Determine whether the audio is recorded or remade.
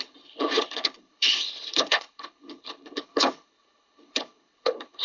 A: remade